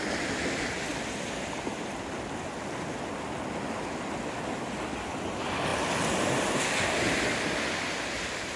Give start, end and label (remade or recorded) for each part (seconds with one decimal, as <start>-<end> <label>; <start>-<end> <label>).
0.0-8.6 recorded